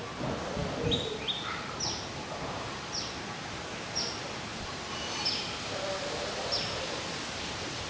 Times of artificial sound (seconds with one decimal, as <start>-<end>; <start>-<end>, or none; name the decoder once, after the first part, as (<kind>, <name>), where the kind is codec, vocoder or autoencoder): 0.6-2.9 (vocoder, BigVGAN v2); 4.5-7.2